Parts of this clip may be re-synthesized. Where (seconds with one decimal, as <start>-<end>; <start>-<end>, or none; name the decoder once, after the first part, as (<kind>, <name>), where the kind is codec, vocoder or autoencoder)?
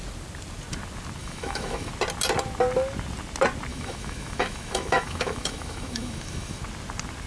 1.2-1.9 (autoencoder, DAC-VAE); 3.7-6.6